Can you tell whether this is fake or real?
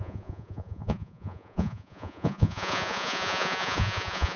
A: fake